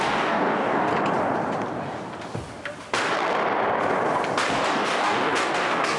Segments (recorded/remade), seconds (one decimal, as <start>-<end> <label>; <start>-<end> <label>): 0.0-0.9 remade; 0.9-4.5 recorded; 4.5-6.0 remade